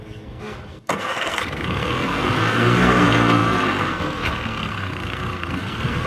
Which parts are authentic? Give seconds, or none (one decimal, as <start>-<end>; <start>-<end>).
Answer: none